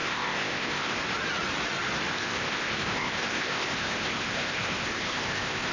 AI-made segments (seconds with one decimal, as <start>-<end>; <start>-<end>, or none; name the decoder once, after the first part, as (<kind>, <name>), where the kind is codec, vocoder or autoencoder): 0.0-1.0 (codec, ZipCodec); 2.1-5.7